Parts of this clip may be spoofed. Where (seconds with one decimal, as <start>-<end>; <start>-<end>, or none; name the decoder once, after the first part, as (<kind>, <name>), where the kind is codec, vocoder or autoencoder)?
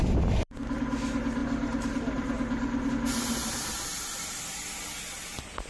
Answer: 1.4-2.9 (vocoder, BigVGAN v2)